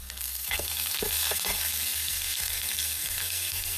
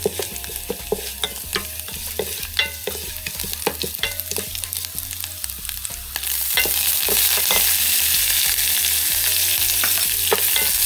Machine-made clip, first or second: first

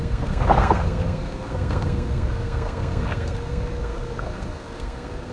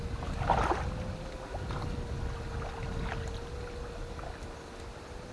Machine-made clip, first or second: first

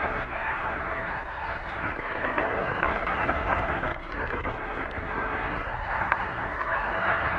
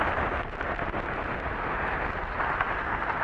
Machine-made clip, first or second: first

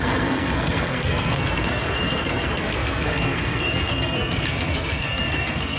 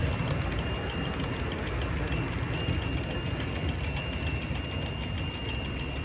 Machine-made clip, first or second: first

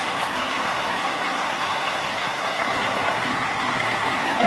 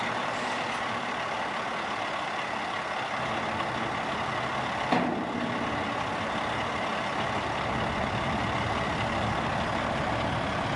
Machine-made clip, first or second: first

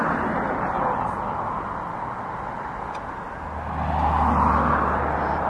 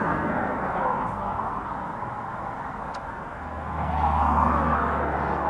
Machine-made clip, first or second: second